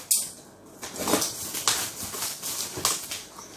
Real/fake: real